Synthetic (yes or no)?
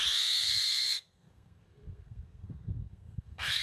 yes